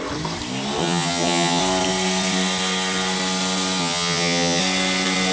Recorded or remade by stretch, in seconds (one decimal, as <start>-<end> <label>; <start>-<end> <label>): 0.0-0.8 recorded; 0.8-1.6 remade; 1.6-3.8 recorded; 3.8-4.6 remade; 4.6-5.3 recorded